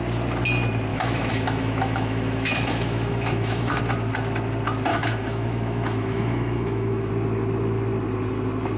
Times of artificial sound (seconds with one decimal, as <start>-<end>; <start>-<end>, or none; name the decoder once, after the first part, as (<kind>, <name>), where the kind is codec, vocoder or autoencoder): 0.9-3.8 (autoencoder, DAC-VAE); 4.9-7.1